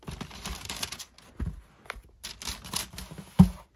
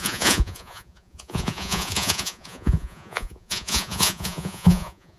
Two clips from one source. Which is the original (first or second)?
first